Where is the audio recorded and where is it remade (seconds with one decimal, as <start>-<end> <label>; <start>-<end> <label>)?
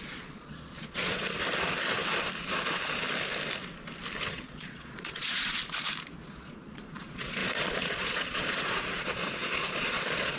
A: 0.0-1.2 remade; 1.2-4.3 recorded; 4.3-5.6 remade; 5.6-6.3 recorded; 6.3-10.4 remade